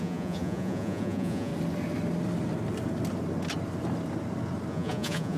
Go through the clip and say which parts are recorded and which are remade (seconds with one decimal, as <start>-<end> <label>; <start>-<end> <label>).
0.0-1.5 remade; 1.5-4.7 recorded; 4.7-5.4 remade